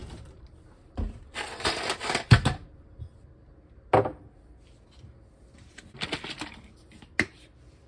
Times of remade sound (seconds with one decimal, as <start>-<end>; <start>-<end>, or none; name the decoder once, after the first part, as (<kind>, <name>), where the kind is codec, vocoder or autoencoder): 0.0-1.2 (vocoder, BigVGAN v2)